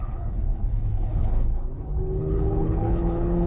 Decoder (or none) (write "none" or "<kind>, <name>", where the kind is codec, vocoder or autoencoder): codec, HILCodec